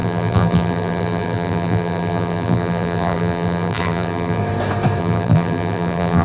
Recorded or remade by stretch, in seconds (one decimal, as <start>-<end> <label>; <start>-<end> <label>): 0.0-4.4 remade; 4.4-5.0 recorded; 5.0-6.2 remade